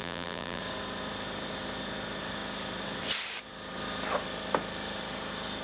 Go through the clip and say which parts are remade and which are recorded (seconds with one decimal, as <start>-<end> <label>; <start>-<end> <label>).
0.0-0.6 remade; 0.6-5.6 recorded